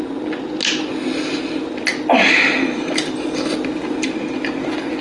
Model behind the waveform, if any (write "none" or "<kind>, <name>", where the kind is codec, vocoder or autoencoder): none